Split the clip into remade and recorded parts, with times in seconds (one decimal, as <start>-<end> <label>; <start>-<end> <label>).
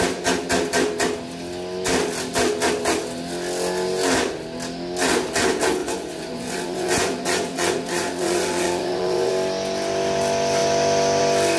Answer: 0.0-5.8 recorded; 5.8-9.3 remade; 9.3-11.6 recorded